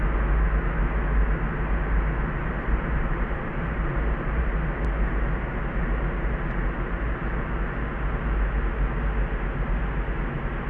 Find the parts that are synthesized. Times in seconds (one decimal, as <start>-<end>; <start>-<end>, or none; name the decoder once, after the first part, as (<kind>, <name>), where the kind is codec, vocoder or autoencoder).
2.4-4.4 (vocoder, BigVGAN v2)